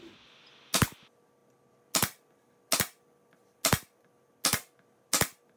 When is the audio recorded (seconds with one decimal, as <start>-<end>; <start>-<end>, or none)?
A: 0.0-5.6